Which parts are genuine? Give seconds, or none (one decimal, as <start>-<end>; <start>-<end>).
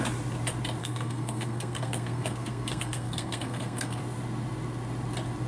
0.0-0.8; 4.0-5.5